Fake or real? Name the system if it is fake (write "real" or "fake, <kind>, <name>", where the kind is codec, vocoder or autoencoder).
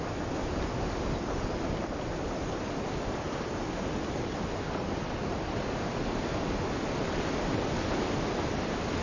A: real